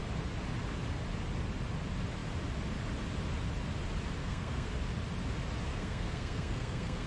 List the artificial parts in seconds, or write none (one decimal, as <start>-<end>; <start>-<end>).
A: 4.2-4.7; 5.7-7.1